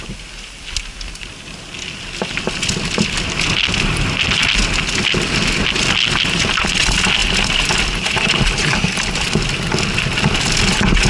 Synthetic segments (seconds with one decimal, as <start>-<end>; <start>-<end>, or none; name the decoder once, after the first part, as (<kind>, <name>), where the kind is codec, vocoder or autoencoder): none

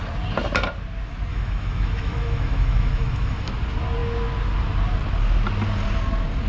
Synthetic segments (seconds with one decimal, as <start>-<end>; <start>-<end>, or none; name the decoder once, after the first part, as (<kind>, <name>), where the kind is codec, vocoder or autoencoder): 1.3-3.5 (autoencoder, DAC-VAE)

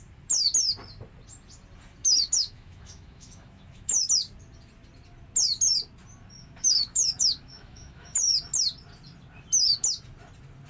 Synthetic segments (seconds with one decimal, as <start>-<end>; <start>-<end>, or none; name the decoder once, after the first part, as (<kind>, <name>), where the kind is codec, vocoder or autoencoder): 2.0-4.0 (autoencoder, DAC-VAE); 6.4-8.3

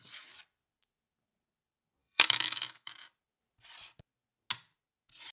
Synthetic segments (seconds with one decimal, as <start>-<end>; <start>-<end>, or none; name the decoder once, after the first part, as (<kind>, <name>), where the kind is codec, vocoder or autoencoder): 2.0-2.9 (autoencoder, DAC-VAE)

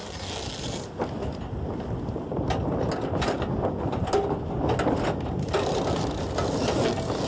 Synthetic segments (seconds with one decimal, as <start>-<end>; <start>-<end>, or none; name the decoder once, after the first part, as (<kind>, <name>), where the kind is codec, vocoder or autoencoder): none

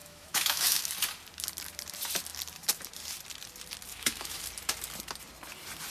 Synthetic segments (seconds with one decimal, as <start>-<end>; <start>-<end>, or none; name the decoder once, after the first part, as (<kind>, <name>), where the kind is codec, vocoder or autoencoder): 0.0-0.9 (autoencoder, DAC-VAE); 3.9-4.4

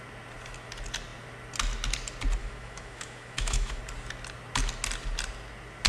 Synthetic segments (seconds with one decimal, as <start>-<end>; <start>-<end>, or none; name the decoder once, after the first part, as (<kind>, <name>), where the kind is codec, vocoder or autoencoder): 2.4-3.8 (autoencoder, DAC-VAE)

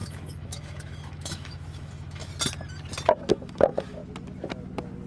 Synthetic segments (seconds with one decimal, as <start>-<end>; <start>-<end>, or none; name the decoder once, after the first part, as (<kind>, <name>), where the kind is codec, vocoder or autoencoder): 0.0-2.3 (autoencoder, DAC-VAE); 3.3-4.0